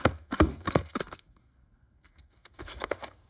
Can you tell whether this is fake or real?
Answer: fake